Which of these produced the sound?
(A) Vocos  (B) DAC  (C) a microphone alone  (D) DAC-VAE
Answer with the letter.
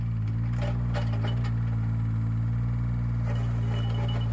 C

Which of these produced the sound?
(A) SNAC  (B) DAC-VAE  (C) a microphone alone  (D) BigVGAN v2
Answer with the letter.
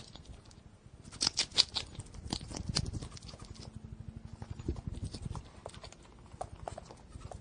C